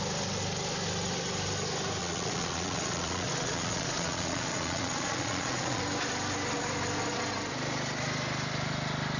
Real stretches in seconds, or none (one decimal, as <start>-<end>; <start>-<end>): 0.0-2.0; 5.8-9.2